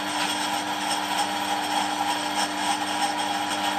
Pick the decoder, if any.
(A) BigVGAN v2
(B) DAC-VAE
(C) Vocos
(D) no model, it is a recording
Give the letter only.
D